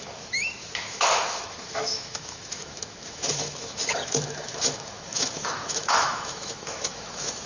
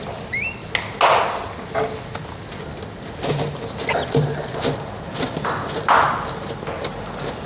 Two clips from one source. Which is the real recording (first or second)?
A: second